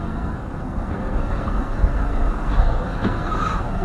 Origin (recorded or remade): remade